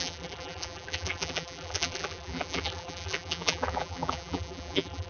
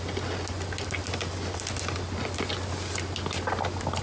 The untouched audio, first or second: second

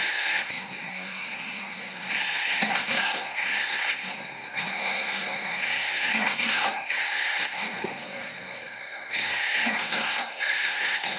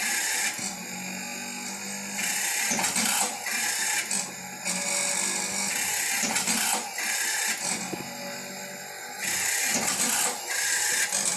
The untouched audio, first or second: second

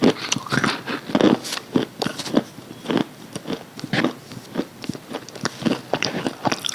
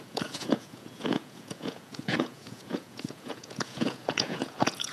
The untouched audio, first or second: first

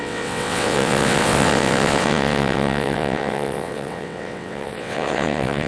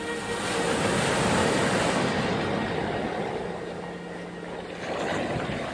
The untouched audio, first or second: second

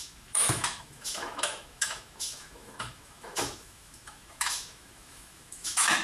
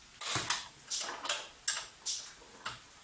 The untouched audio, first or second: second